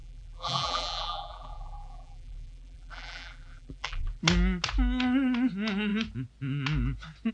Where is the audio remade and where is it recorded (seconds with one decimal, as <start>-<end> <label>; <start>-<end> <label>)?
0.0-4.2 remade; 4.2-7.3 recorded